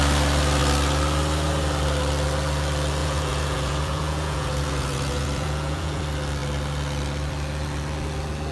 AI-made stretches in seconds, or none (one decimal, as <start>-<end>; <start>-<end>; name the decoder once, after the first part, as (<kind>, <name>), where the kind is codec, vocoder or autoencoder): 3.0-6.0 (vocoder, Vocos)